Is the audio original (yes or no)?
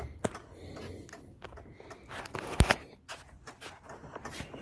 yes